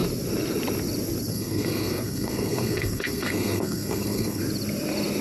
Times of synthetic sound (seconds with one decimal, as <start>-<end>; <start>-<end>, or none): 1.3-4.4